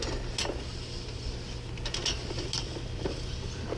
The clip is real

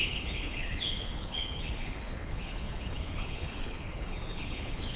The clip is fake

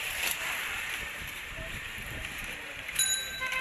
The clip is fake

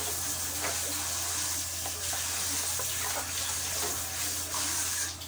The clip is real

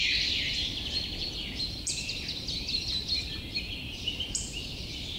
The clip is fake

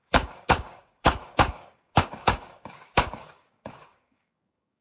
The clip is fake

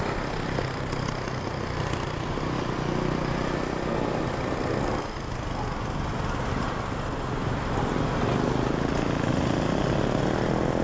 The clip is real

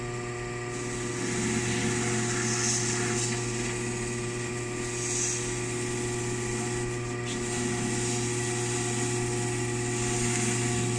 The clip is real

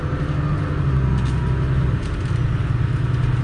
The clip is real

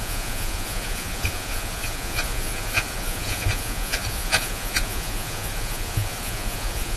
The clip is fake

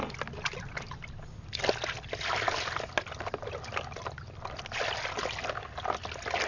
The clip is real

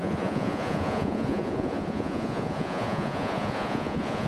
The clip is fake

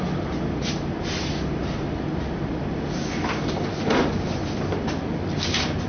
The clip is real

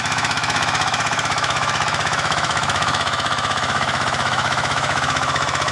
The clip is fake